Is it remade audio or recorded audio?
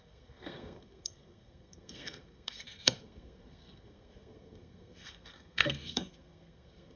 remade